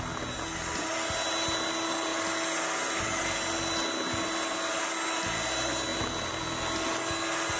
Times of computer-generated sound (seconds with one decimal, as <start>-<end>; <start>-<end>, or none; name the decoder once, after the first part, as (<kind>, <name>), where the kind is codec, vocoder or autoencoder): none